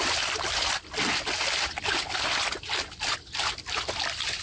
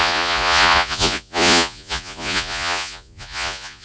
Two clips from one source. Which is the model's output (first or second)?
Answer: second